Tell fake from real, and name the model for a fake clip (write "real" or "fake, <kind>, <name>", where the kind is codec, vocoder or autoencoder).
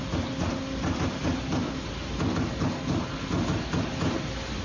real